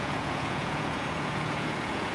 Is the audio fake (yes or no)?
yes